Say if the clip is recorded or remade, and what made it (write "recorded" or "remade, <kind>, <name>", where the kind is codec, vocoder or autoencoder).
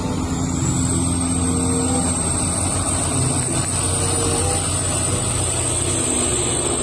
recorded